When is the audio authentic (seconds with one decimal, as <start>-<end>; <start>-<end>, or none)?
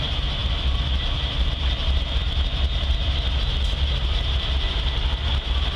0.0-5.8